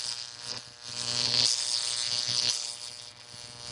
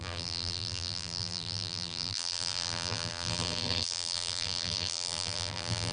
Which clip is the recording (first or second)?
first